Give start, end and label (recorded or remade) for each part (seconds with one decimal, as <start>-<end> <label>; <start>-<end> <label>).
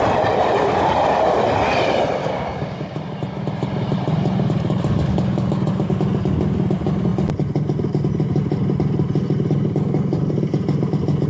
0.0-2.2 recorded; 2.2-3.0 remade; 3.0-5.1 recorded; 5.1-5.7 remade; 5.7-11.3 recorded